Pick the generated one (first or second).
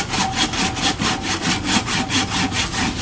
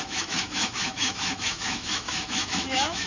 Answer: second